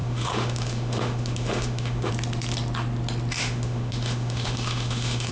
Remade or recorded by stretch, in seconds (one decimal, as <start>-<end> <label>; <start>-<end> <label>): 0.0-2.1 remade; 2.1-3.4 recorded; 3.4-5.3 remade